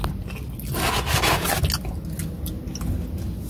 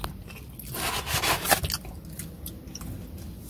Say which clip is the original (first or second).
first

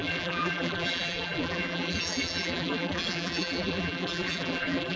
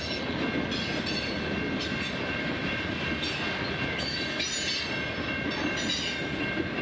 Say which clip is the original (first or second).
second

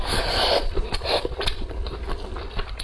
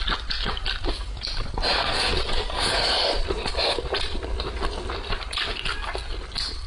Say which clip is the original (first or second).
second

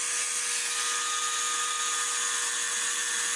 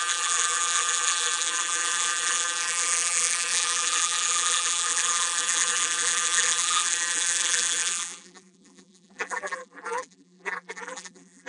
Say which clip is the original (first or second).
first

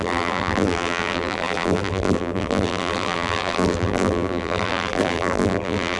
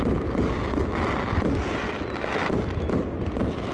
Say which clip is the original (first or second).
second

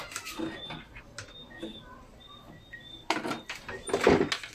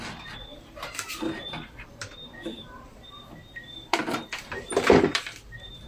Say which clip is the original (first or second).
first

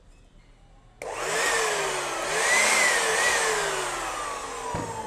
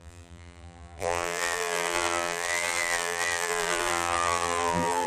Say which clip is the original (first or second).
first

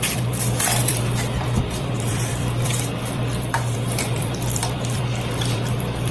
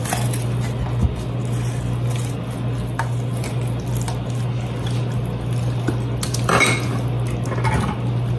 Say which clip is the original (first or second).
second